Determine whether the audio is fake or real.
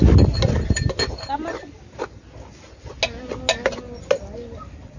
real